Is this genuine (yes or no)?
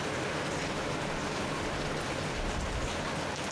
yes